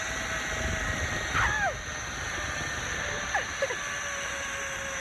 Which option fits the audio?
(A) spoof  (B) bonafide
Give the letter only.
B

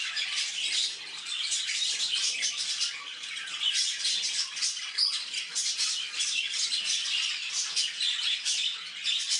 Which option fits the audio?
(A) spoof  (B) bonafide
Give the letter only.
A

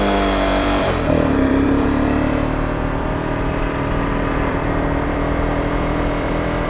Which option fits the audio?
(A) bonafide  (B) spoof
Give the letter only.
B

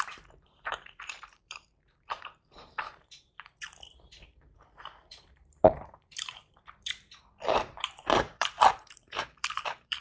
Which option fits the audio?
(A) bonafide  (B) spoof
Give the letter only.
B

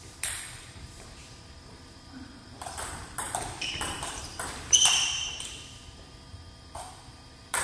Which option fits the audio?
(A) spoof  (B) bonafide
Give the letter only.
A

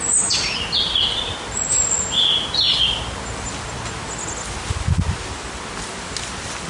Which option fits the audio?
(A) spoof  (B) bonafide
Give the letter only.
B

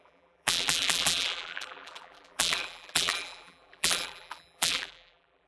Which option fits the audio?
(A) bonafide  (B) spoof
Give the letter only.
B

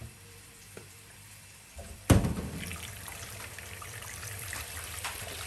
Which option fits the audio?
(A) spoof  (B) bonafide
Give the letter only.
A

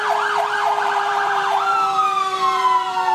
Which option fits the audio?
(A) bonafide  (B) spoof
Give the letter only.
B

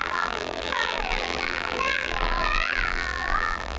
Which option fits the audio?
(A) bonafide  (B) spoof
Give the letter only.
B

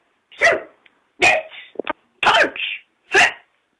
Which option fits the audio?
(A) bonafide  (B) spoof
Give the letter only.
A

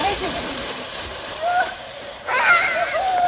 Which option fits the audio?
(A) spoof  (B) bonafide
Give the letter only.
A